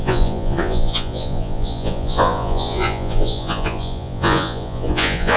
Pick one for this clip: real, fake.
fake